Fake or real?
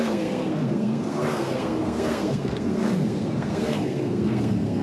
fake